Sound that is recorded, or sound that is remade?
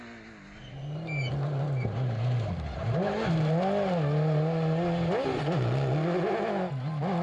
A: recorded